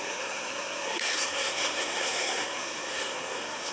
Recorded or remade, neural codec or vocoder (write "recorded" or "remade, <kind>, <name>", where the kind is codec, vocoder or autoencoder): remade, codec, SNAC